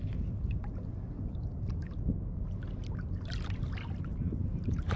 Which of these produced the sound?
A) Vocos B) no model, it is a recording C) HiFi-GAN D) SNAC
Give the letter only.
B